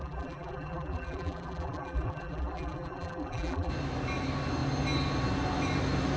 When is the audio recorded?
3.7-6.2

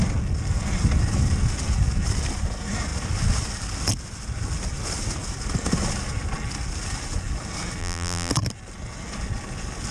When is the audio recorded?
0.0-7.8; 8.3-9.9

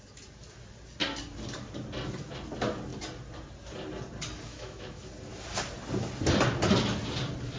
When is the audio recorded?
0.0-4.5; 5.0-7.6

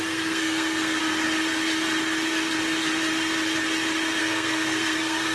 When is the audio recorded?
1.0-4.2

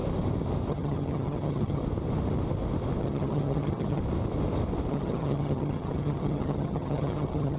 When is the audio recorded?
0.0-0.7; 1.8-3.0; 4.0-4.9

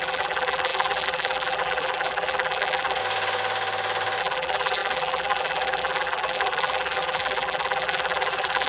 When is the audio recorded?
3.0-4.2